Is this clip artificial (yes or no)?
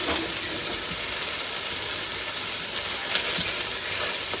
no